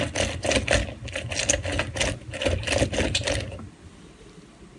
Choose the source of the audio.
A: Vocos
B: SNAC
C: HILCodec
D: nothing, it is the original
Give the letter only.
D